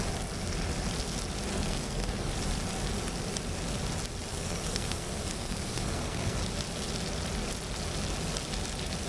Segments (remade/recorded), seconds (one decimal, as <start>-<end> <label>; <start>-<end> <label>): 0.0-1.5 recorded; 1.5-2.3 remade; 2.3-4.3 recorded; 4.3-6.4 remade; 6.4-9.1 recorded